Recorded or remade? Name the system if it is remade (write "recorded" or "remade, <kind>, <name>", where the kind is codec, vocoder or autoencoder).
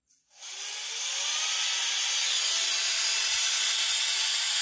recorded